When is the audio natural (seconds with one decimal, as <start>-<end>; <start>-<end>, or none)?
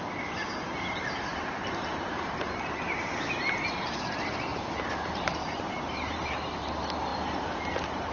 none